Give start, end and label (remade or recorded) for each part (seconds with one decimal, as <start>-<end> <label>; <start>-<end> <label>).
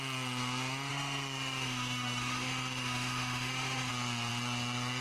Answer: 0.0-0.9 recorded; 0.9-3.9 remade; 3.9-5.0 recorded